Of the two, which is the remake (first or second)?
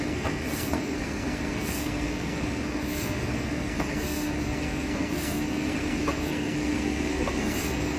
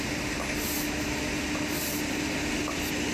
first